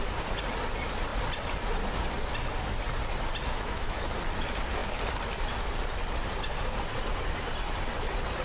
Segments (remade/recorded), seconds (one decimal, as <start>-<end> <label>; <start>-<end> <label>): 0.0-3.5 recorded; 3.5-4.1 remade; 4.1-8.4 recorded